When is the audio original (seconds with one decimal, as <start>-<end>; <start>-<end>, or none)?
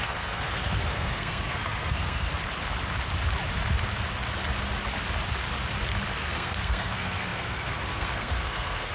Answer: 2.3-6.2